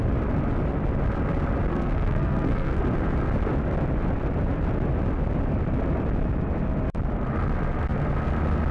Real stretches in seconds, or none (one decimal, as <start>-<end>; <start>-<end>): 0.0-1.7; 2.8-8.7